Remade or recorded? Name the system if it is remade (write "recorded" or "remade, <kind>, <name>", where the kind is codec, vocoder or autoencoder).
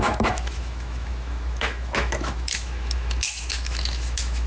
remade, autoencoder, DAC-VAE